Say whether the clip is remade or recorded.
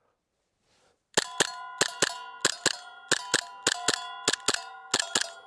recorded